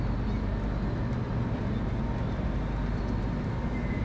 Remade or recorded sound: recorded